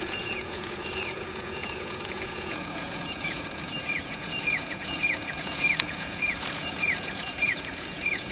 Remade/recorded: remade